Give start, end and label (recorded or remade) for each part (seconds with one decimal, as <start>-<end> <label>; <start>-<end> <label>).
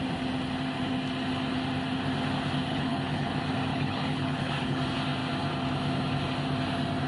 0.0-2.7 recorded; 2.7-3.3 remade; 3.3-3.7 recorded; 3.7-4.8 remade; 4.8-7.1 recorded